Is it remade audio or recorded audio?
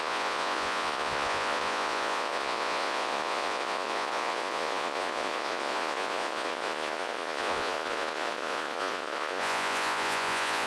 remade